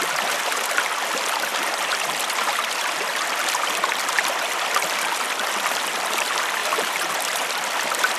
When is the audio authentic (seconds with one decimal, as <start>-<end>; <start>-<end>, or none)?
0.0-6.6; 7.1-8.2